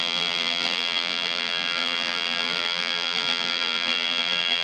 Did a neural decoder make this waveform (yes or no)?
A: yes